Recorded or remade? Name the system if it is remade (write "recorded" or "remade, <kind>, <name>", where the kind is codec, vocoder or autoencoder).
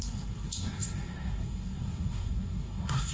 remade, codec, SNAC